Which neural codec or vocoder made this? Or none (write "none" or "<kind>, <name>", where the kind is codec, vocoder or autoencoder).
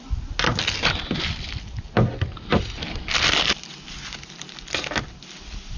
none